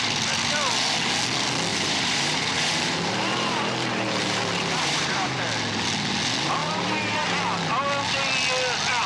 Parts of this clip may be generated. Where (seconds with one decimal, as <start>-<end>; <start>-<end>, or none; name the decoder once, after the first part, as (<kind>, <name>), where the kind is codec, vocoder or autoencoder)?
1.7-5.4 (vocoder, BigVGAN v2); 6.6-7.4